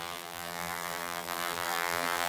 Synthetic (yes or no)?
yes